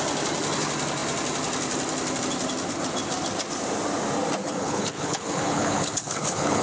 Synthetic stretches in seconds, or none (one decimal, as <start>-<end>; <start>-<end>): 4.4-6.6